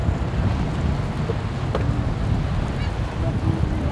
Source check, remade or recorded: recorded